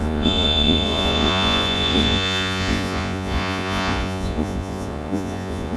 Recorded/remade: remade